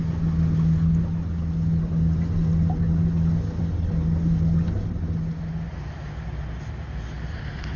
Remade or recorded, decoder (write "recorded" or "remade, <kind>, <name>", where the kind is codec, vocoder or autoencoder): recorded